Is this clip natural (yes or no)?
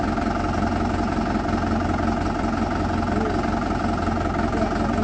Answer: yes